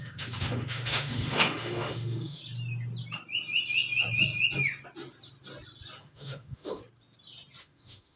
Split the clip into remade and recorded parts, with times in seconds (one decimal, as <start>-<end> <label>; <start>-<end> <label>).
0.0-2.4 remade; 2.4-6.0 recorded; 6.0-6.8 remade; 6.8-7.6 recorded; 7.6-8.2 remade